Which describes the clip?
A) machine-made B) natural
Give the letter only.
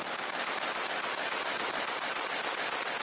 B